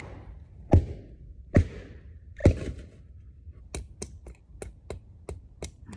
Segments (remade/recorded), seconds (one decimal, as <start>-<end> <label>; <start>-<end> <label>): 0.0-6.0 recorded